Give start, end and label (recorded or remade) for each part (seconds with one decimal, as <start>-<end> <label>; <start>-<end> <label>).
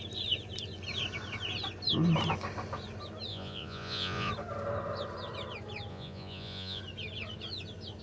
0.0-3.3 recorded; 3.3-4.3 remade; 4.3-5.9 recorded; 5.9-6.8 remade; 6.8-8.0 recorded